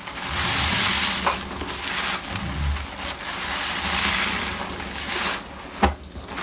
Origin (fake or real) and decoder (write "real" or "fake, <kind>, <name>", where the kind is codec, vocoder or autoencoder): real